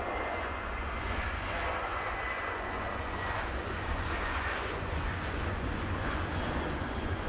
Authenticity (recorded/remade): remade